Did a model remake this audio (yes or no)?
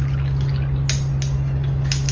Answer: no